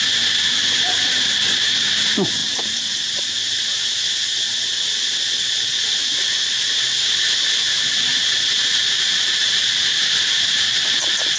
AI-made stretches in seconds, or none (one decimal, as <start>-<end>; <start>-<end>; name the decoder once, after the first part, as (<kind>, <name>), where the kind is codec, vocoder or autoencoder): 2.4-3.2 (vocoder, BigVGAN v2)